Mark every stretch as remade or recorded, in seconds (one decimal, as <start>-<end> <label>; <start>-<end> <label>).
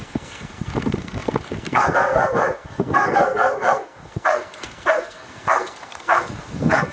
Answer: 0.0-6.9 remade